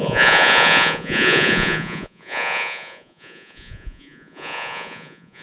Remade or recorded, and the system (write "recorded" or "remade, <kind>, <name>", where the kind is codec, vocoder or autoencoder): remade, vocoder, Vocos